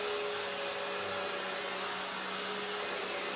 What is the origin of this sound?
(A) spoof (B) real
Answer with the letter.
B